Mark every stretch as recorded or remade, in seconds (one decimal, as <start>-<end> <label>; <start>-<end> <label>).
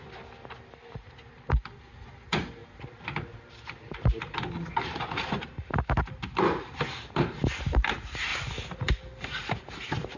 0.0-10.2 recorded